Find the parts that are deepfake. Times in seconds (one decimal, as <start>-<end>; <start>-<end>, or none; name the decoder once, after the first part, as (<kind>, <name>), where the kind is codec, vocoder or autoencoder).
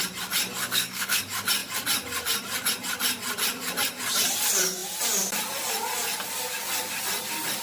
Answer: 0.6-1.2 (codec, SNAC)